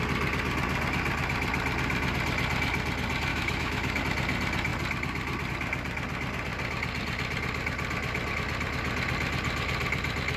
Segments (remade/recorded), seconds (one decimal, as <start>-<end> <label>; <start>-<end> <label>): 0.0-3.3 recorded; 3.3-4.0 remade; 4.0-10.4 recorded